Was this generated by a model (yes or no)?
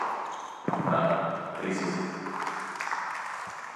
no